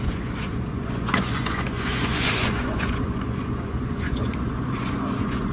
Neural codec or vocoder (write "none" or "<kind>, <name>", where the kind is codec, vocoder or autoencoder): vocoder, Vocos